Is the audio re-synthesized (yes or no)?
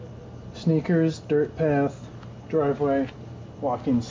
no